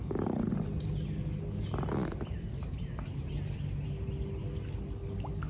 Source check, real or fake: real